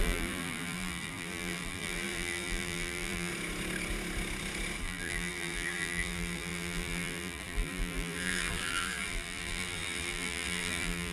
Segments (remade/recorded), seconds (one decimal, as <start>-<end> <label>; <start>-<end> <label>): 0.0-3.3 remade; 3.3-4.8 recorded; 4.8-11.1 remade